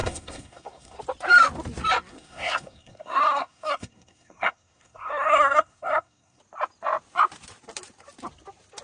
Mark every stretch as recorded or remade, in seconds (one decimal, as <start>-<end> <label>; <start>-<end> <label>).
0.0-1.0 remade; 1.0-2.1 recorded; 2.1-6.4 remade; 6.4-8.8 recorded